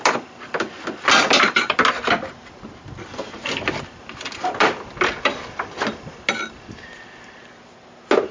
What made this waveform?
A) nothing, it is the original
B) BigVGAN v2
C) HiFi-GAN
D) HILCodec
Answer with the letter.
A